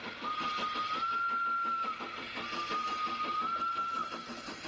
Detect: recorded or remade recorded